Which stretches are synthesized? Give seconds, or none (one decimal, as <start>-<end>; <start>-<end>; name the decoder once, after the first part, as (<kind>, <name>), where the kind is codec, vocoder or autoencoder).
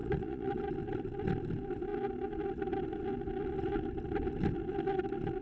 0.0-0.6 (vocoder, Vocos)